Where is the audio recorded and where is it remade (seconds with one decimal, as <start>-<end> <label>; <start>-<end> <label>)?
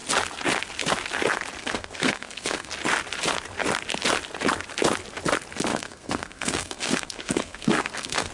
0.0-1.6 recorded; 1.6-2.7 remade; 2.7-5.7 recorded; 5.7-8.3 remade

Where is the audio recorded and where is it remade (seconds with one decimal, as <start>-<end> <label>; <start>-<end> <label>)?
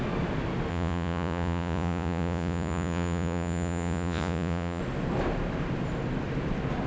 0.0-0.7 recorded; 0.7-4.8 remade; 4.8-6.9 recorded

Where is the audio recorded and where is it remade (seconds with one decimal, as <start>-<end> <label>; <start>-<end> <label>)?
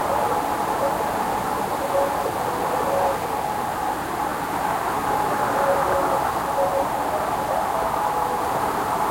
0.0-9.1 recorded